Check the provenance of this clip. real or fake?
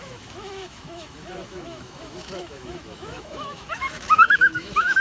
fake